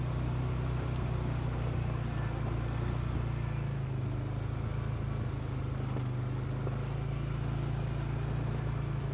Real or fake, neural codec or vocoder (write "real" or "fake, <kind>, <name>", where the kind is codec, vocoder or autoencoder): real